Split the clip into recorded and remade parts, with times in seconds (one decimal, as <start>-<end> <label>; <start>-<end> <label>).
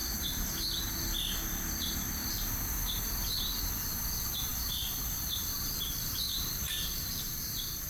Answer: 0.0-4.5 recorded; 4.5-7.1 remade; 7.1-7.9 recorded